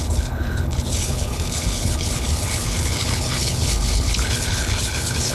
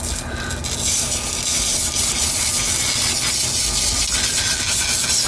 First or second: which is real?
second